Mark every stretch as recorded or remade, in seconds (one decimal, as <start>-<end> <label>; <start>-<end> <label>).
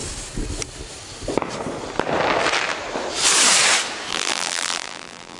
0.0-4.1 recorded; 4.1-5.4 remade